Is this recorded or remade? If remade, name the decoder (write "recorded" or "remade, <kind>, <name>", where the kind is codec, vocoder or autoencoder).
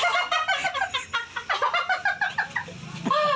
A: recorded